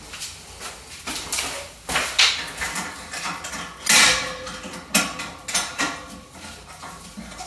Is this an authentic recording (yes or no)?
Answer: yes